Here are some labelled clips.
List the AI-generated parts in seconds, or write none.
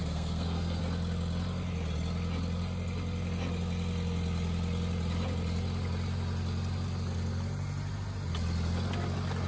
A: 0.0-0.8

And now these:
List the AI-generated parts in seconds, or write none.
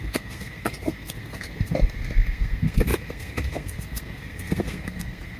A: 0.0-5.4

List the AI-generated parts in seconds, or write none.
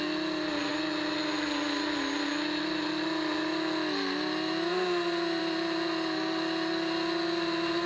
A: none